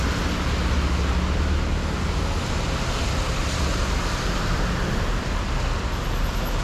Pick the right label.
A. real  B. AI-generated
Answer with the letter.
A